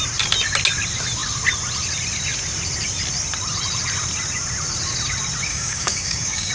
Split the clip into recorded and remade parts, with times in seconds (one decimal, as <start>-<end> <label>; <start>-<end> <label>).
0.0-5.5 recorded; 5.5-6.5 remade